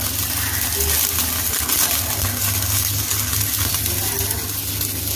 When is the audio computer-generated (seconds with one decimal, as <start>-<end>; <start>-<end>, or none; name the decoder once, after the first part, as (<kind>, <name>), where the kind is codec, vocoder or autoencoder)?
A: none